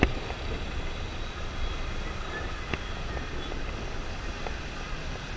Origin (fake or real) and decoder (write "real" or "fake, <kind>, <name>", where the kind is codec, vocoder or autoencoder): real